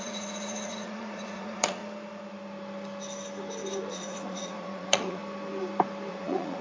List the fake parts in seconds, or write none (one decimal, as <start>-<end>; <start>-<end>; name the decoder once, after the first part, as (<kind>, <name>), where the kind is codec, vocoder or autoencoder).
0.0-1.8 (vocoder, Vocos); 3.9-5.2; 6.1-6.6